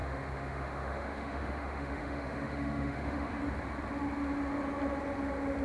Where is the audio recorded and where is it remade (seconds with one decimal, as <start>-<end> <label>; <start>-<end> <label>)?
0.0-3.4 remade; 3.4-5.6 recorded